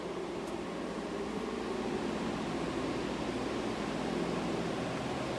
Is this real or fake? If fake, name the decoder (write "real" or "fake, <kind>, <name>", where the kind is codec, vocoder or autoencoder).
real